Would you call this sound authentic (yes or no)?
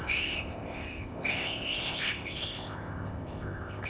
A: no